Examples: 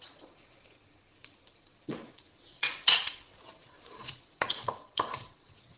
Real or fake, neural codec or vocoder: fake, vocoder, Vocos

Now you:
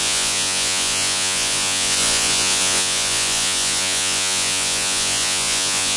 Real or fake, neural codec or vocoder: fake, vocoder, Vocos